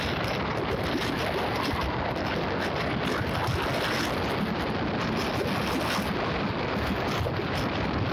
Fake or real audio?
real